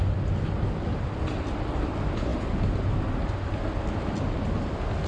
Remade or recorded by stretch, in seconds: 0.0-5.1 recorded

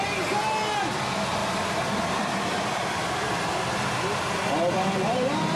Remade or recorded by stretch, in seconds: 0.0-1.4 recorded; 1.4-4.5 remade; 4.5-5.6 recorded

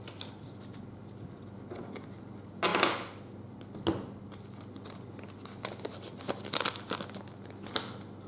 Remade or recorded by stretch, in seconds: 0.0-8.3 recorded

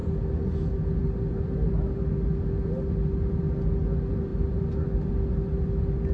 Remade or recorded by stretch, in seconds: 0.0-6.1 recorded

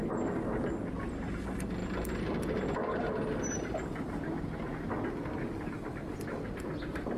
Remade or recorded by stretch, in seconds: 0.0-7.2 recorded